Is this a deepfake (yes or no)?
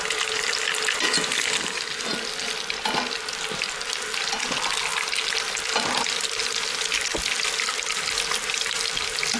no